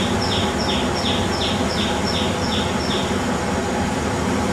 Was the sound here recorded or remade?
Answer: recorded